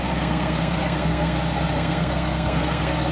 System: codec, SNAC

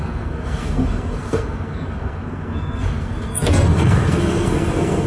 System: codec, SNAC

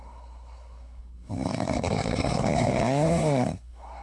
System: codec, SNAC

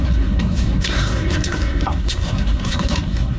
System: codec, SNAC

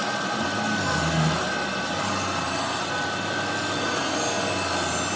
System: none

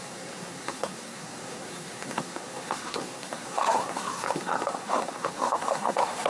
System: codec, SNAC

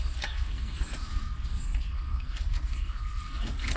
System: codec, SNAC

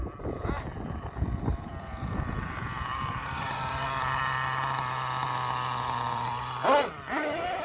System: none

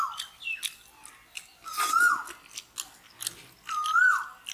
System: none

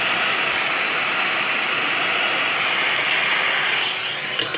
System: none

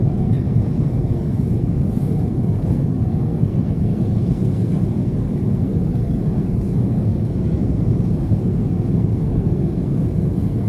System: codec, SNAC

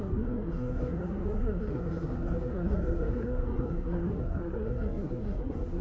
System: codec, SNAC